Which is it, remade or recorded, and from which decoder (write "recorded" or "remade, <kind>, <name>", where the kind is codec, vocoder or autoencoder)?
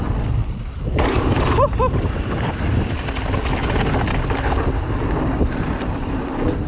recorded